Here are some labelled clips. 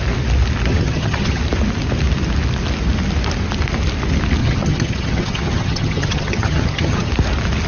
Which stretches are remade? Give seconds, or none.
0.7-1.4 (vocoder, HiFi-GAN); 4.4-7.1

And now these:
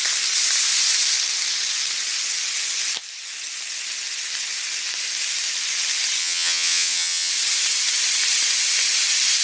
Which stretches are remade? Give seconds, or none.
6.2-7.3 (vocoder, HiFi-GAN)

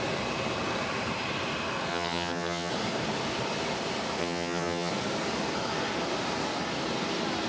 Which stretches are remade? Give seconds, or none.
1.9-2.7 (vocoder, HiFi-GAN); 4.2-4.9

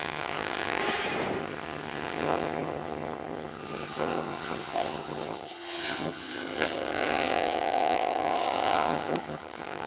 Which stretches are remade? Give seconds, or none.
0.0-0.8 (vocoder, HiFi-GAN); 1.4-9.9